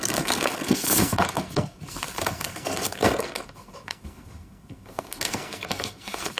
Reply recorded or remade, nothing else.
remade